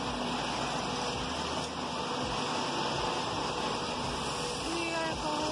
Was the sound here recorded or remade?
recorded